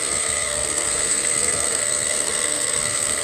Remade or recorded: remade